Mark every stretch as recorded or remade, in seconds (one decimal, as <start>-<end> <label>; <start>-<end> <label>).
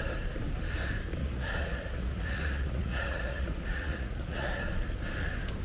0.0-1.2 recorded; 1.2-4.6 remade; 4.6-5.6 recorded